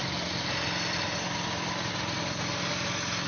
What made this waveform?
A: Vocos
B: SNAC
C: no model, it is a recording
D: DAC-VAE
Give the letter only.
C